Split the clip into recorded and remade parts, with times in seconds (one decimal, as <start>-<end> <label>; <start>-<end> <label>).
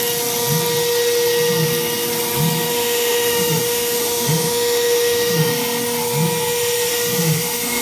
0.0-2.7 recorded; 2.7-5.5 remade; 5.5-6.9 recorded; 6.9-7.8 remade